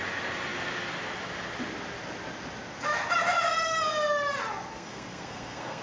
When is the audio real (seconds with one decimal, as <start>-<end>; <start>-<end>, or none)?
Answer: 0.0-4.7